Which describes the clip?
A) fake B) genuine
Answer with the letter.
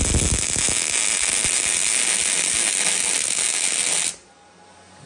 B